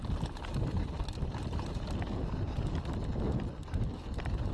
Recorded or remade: recorded